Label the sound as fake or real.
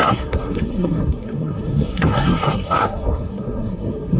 fake